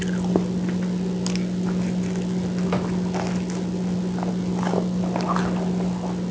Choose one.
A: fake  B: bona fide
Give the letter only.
B